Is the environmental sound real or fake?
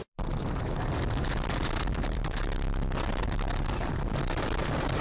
fake